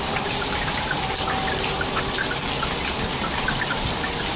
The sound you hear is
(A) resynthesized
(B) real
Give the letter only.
B